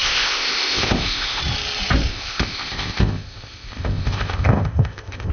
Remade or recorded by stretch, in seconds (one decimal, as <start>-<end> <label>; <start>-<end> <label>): 0.0-1.4 remade; 1.4-2.1 recorded; 2.1-5.3 remade